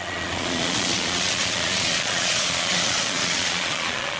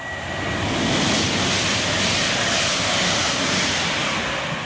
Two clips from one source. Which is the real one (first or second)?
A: second